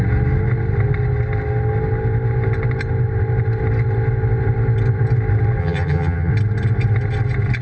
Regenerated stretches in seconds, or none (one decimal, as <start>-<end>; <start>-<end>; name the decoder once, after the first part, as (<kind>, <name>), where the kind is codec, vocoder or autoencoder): 5.6-6.3 (vocoder, HiFi-GAN)